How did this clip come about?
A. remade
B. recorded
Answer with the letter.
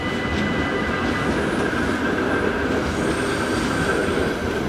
B